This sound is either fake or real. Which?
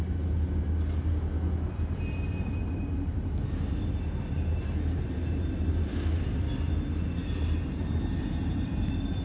real